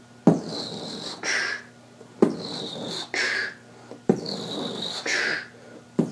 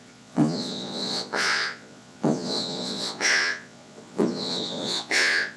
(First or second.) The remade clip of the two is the second